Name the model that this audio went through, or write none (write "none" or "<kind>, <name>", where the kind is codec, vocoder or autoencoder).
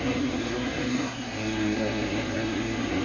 codec, SNAC